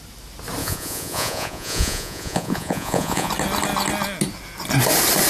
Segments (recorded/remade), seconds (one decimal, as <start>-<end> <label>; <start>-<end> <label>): 0.0-0.6 recorded; 0.6-3.3 remade; 3.3-5.3 recorded